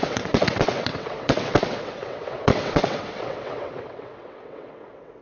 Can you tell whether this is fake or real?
fake